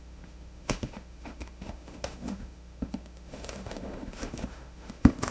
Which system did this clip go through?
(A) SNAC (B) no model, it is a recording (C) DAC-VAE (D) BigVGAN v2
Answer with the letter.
C